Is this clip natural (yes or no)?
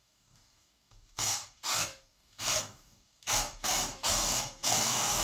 no